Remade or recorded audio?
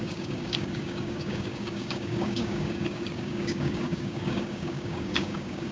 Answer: remade